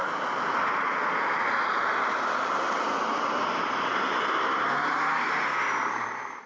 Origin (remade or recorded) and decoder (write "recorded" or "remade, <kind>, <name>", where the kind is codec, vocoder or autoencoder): recorded